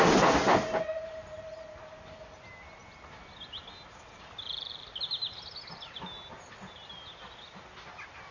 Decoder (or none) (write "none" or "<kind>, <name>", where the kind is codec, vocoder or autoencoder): none